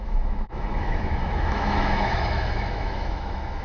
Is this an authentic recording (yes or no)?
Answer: no